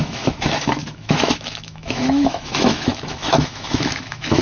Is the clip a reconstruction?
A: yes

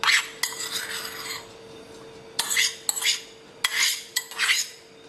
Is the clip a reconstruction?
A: no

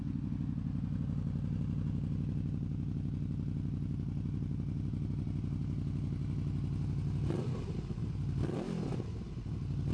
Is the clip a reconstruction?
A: no